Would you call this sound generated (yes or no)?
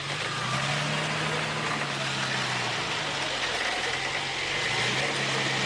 no